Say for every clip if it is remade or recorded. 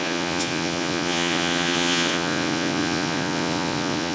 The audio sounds remade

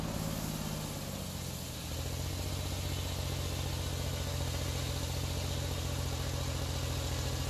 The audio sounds recorded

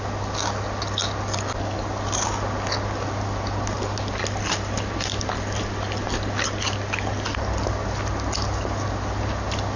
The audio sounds recorded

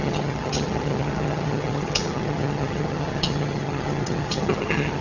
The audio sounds remade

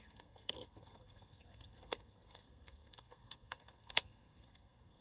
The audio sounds remade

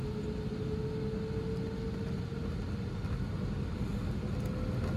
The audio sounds recorded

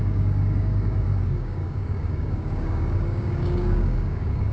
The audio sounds remade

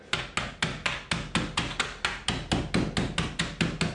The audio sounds recorded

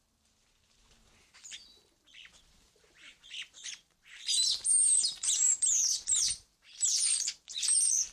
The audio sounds remade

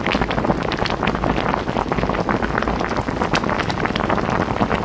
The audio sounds recorded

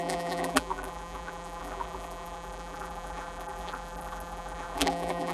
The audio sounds remade